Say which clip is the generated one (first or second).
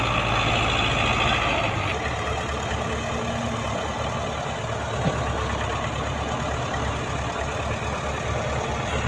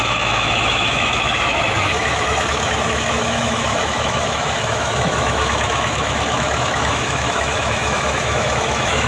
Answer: second